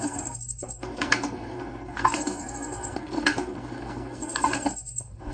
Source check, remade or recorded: remade